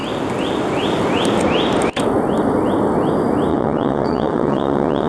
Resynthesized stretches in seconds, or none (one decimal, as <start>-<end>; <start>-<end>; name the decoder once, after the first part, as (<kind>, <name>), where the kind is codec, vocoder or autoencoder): 3.5-5.1 (vocoder, WaveNeXt)